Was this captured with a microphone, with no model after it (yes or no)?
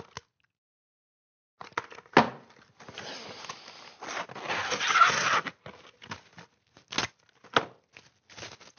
yes